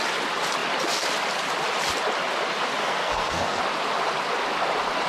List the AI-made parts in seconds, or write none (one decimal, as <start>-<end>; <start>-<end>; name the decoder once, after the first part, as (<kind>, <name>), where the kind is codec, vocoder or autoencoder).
2.8-3.6 (codec, SNAC)